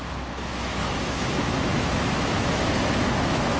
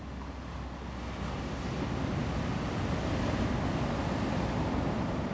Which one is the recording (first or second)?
second